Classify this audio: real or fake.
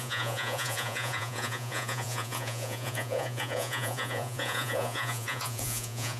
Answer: fake